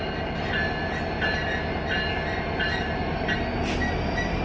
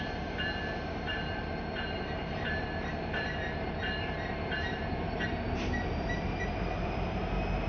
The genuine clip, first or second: first